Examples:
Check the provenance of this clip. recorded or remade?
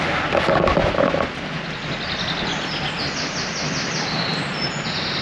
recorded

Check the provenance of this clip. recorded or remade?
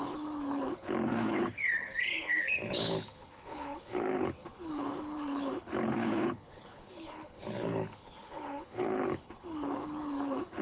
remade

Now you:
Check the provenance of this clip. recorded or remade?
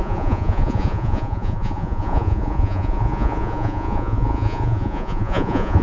remade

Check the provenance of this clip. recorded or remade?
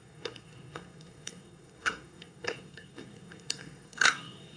remade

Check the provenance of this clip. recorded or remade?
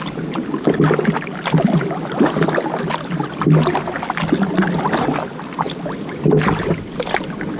recorded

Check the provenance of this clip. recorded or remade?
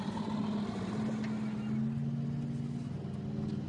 recorded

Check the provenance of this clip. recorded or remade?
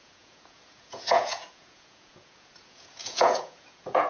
remade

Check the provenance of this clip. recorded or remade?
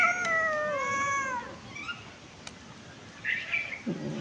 recorded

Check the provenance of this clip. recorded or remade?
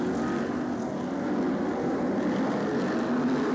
recorded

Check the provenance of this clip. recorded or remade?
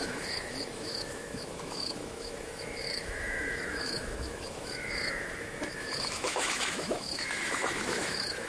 remade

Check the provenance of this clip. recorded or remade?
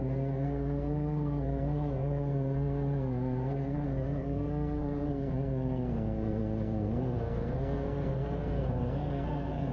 remade